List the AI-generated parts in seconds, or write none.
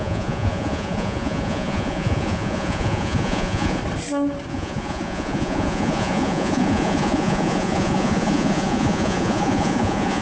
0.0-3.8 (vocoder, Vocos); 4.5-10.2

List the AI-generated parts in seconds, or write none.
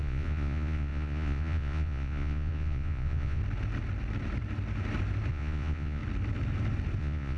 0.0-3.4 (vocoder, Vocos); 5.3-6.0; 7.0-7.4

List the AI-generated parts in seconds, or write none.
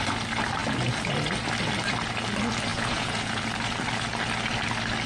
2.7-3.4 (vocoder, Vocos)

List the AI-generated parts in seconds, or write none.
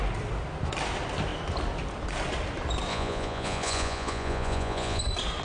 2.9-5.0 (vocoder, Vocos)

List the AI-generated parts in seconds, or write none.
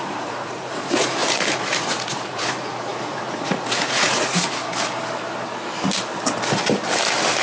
0.0-4.6 (vocoder, Vocos)